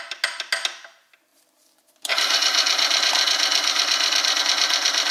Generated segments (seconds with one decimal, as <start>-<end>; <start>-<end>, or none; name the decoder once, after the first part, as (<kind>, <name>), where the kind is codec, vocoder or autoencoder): 1.3-4.4 (vocoder, BigVGAN v2)